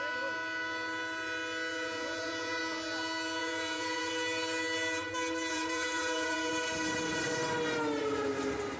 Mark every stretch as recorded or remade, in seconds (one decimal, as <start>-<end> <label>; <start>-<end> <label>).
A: 0.0-1.7 recorded; 1.7-2.6 remade; 2.6-3.4 recorded; 3.4-4.1 remade; 4.1-5.5 recorded; 5.5-6.5 remade; 6.5-8.8 recorded